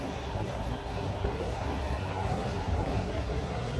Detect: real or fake fake